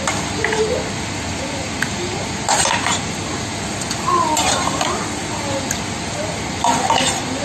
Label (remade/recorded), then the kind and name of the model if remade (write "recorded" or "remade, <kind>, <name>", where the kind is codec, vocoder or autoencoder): recorded